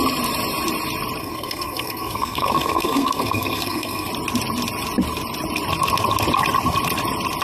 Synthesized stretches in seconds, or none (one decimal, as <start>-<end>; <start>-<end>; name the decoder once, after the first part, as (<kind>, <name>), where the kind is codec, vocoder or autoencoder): 1.2-4.1 (codec, SNAC)